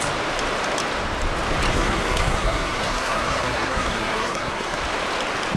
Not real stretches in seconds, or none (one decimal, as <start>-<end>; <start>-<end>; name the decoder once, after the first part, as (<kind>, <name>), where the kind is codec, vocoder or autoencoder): 1.7-4.8 (codec, SNAC)